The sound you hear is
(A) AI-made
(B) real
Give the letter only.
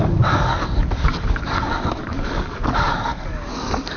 A